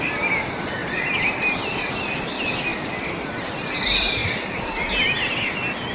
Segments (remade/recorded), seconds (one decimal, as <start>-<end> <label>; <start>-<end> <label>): 0.0-5.9 recorded